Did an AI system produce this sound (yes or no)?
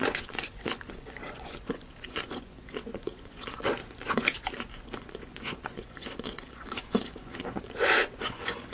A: yes